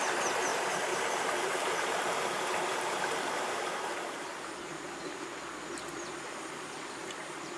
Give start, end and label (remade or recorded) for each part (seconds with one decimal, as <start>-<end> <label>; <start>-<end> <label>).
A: 0.0-0.5 recorded; 0.5-5.1 remade; 5.1-7.0 recorded; 7.0-7.6 remade